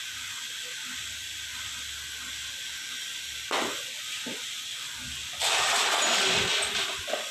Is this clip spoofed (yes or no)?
no